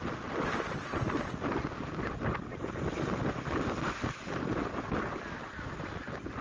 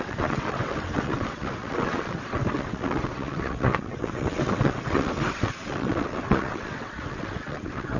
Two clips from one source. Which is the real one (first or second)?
first